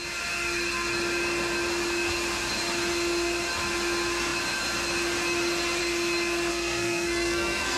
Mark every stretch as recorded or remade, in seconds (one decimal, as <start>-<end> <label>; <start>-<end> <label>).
0.0-6.5 recorded; 6.5-7.8 remade